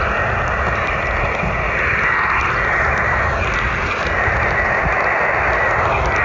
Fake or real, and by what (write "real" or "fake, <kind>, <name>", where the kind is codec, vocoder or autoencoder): real